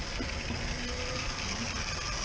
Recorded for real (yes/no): yes